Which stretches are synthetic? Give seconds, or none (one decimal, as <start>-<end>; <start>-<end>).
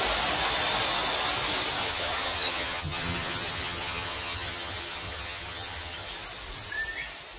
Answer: 1.8-6.1